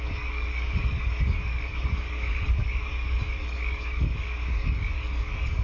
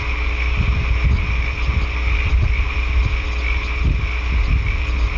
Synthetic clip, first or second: first